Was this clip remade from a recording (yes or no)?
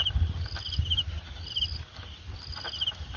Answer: no